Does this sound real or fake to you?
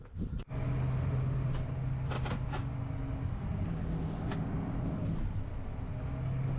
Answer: real